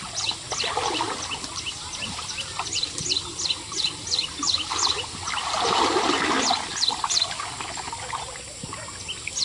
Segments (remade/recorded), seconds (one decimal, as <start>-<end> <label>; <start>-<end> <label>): 0.0-9.4 recorded